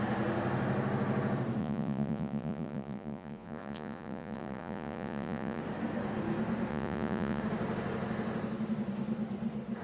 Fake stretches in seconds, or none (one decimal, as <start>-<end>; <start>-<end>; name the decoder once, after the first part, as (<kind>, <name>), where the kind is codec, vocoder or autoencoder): 1.6-5.6 (vocoder, Vocos); 6.7-7.4